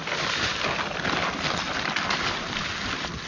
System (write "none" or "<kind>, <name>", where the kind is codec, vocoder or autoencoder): none